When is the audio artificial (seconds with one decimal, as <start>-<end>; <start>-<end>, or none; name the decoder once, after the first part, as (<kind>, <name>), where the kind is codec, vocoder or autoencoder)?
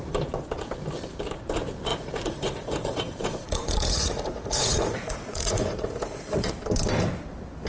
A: 1.9-6.5 (vocoder, Vocos)